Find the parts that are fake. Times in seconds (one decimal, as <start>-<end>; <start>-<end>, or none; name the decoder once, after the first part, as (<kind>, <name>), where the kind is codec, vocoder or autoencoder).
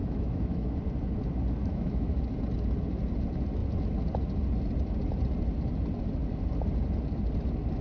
0.0-0.8 (autoencoder, DAC-VAE); 1.6-2.2